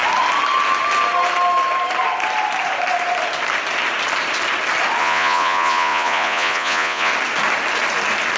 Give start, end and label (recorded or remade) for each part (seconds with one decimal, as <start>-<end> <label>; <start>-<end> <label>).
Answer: 0.0-5.0 recorded; 5.0-7.1 remade; 7.1-8.4 recorded